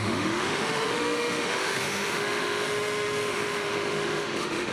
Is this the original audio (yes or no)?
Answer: no